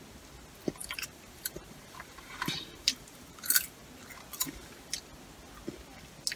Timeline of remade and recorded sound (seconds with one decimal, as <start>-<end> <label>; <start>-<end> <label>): 0.0-0.8 recorded; 0.8-3.8 remade; 3.8-4.4 recorded; 4.4-4.9 remade; 4.9-6.4 recorded